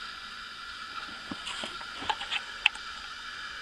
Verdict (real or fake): fake